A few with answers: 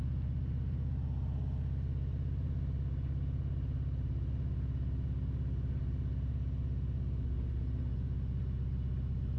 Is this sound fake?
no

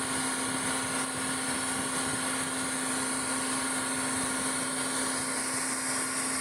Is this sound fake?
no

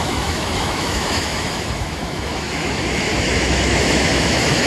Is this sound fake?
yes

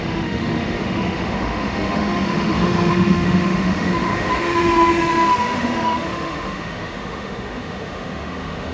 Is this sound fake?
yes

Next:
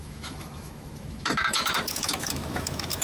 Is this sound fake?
yes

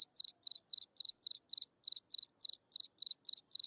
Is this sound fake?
no